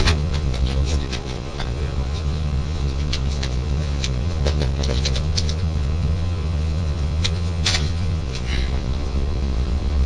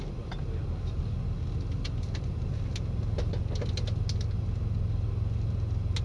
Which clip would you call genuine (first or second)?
second